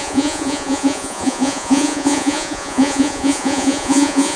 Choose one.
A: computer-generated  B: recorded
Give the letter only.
A